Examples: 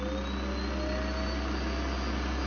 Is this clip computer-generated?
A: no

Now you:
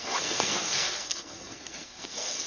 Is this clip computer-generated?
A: yes